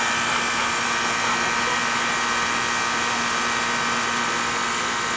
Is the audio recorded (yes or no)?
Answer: yes